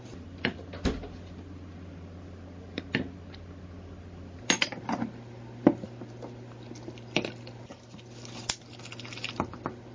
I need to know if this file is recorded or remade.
remade